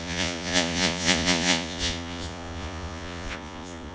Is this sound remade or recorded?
remade